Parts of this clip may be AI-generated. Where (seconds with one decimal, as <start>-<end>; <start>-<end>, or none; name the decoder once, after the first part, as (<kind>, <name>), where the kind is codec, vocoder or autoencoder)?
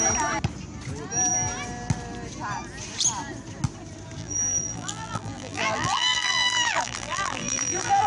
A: 4.2-8.1 (vocoder, BigVGAN v2)